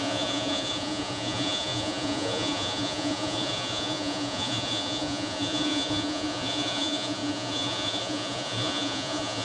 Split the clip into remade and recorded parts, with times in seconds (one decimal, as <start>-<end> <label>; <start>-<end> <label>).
0.0-9.4 remade